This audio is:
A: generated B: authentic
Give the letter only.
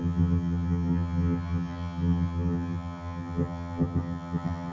A